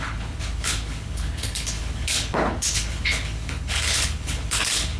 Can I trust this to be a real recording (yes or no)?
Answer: no